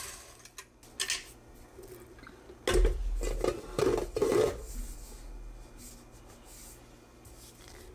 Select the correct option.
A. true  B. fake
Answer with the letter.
A